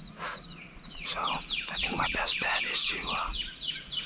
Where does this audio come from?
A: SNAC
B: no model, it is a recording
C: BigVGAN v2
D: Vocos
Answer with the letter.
D